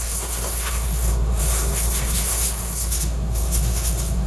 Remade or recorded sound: remade